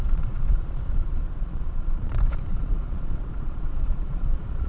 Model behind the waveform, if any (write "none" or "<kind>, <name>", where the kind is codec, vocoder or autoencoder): vocoder, Vocos